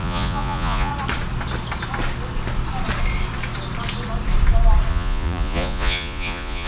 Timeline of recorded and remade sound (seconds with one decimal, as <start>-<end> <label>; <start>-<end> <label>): 0.0-0.9 remade; 0.9-4.9 recorded; 4.9-6.7 remade